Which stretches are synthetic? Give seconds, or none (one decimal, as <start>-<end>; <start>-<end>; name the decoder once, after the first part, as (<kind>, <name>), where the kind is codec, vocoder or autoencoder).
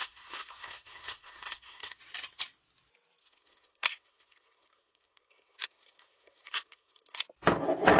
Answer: 0.0-2.0 (codec, SNAC); 3.2-7.2